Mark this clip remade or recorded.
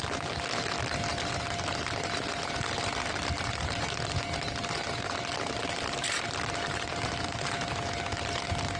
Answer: recorded